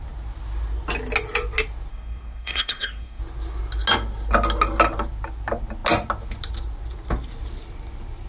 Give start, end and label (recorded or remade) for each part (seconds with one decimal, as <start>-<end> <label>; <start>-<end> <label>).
0.0-1.9 recorded; 1.9-3.2 remade; 3.2-8.3 recorded